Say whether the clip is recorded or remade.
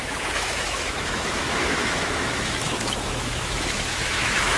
remade